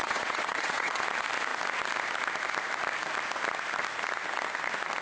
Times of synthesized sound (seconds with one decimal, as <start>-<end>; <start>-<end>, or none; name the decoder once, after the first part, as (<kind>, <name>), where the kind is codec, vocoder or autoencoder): 0.0-1.0 (vocoder, WaveNeXt)